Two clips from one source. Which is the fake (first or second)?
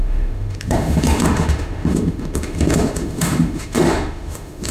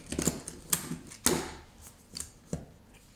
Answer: first